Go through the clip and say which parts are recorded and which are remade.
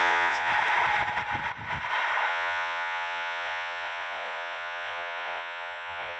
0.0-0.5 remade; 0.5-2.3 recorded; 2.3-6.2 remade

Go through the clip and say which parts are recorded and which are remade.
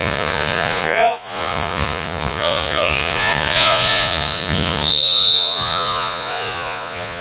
0.0-7.2 remade